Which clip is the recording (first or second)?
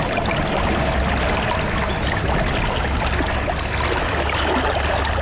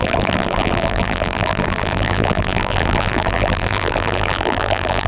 first